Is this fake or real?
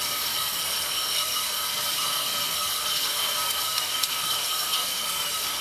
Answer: fake